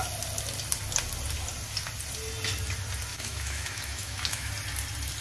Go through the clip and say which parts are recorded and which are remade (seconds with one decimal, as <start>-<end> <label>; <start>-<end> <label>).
0.0-3.1 recorded; 3.1-4.5 remade; 4.5-5.2 recorded